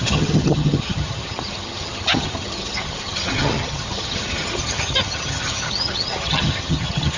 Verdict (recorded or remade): remade